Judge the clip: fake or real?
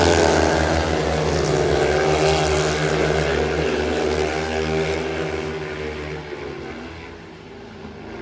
real